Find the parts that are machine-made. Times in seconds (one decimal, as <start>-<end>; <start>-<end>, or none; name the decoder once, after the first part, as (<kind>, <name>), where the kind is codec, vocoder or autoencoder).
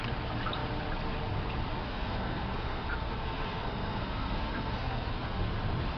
1.9-5.5 (codec, SNAC)